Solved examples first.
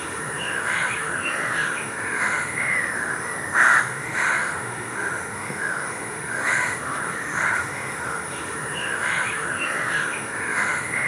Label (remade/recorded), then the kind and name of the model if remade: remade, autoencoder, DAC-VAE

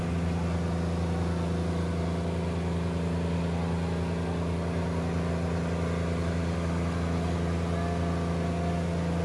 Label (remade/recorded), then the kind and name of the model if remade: recorded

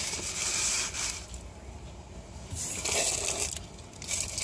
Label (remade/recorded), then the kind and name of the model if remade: recorded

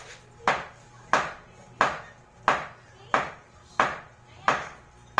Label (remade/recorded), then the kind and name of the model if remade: recorded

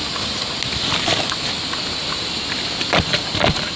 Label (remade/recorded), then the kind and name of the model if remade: recorded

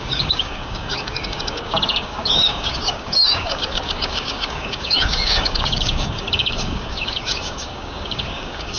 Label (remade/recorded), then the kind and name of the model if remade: remade, codec, DAC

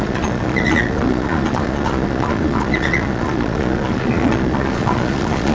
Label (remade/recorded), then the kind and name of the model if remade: remade, vocoder, Vocos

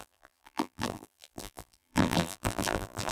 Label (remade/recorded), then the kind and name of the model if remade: remade, vocoder, BigVGAN v2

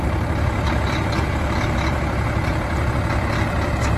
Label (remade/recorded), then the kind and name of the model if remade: recorded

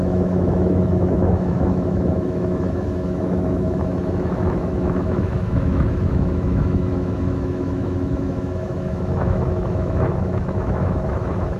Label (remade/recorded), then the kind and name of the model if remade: remade, autoencoder, DAC-VAE